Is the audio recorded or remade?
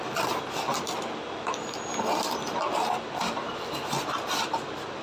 recorded